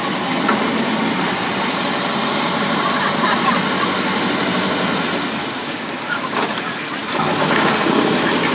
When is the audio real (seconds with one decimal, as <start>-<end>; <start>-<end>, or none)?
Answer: 0.0-5.4; 6.5-8.5